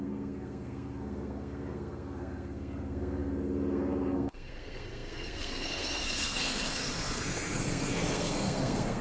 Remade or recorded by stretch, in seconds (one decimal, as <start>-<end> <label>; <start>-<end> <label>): 0.0-9.0 remade